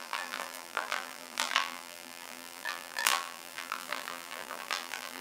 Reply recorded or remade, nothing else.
remade